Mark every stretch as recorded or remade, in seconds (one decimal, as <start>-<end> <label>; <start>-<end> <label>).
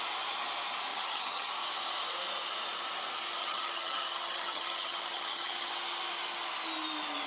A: 0.0-0.9 recorded; 0.9-1.5 remade; 1.5-3.4 recorded; 3.4-5.7 remade; 5.7-7.3 recorded